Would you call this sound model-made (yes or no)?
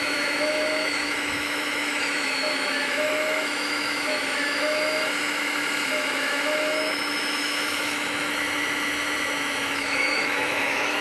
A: yes